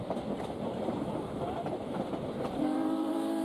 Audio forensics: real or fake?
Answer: fake